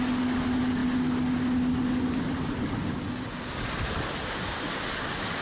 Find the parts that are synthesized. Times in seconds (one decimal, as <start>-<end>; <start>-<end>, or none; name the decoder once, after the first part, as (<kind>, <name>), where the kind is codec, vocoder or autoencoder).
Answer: none

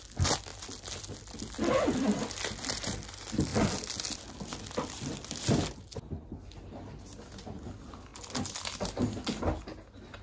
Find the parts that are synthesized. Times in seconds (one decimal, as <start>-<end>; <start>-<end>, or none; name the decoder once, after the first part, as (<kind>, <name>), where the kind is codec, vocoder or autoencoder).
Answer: none

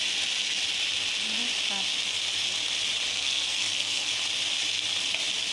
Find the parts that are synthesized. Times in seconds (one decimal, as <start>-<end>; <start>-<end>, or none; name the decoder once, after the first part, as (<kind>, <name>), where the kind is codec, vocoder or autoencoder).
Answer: 3.1-4.1 (codec, SNAC)

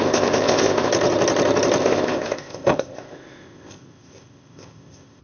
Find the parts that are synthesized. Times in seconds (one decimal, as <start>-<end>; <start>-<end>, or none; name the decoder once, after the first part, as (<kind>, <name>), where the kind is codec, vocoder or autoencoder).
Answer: 0.0-0.9 (codec, ZipCodec); 1.8-5.2

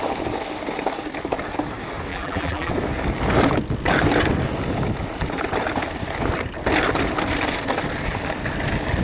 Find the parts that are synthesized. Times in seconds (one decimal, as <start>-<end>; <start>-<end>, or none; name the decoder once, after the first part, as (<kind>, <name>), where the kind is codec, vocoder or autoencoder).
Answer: 2.1-2.7 (vocoder, BigVGAN v2)

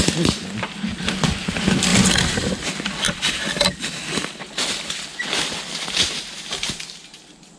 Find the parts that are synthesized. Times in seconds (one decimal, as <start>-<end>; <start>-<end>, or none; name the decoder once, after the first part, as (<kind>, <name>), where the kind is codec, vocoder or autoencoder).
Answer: 1.9-3.4 (vocoder, BigVGAN v2); 5.1-6.2